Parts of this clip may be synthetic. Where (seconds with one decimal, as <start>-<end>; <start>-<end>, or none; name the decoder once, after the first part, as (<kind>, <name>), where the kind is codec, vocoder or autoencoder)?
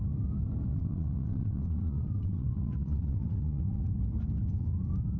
0.7-3.8 (vocoder, WaveNeXt)